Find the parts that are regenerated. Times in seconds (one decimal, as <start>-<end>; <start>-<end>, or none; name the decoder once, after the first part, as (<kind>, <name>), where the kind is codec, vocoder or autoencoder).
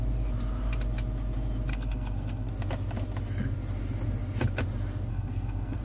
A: 1.7-2.5 (codec, SNAC); 5.1-5.8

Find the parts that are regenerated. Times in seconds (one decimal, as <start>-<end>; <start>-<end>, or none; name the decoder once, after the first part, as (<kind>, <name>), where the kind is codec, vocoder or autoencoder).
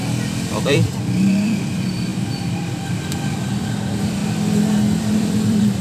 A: 0.0-4.2 (vocoder, BigVGAN v2); 5.0-5.8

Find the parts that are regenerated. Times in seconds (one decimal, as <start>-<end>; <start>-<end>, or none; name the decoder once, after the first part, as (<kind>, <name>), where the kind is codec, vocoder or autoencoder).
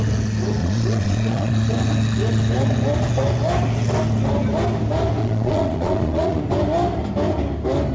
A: 0.6-1.5 (vocoder, Vocos); 5.2-6.4